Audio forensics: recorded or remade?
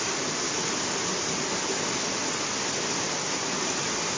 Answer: recorded